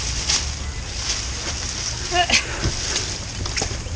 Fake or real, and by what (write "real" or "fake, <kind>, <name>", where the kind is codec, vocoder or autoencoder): real